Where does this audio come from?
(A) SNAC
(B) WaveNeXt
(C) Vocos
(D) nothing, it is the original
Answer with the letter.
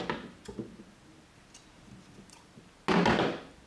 D